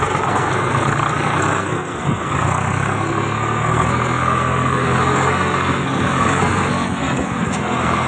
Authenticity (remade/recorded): remade